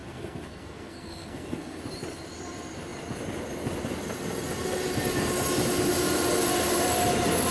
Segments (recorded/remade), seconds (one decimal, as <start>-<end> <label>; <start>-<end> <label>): 0.0-1.8 remade; 1.8-7.5 recorded